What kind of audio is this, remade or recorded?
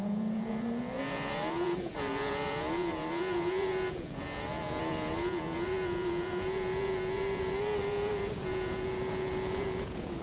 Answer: remade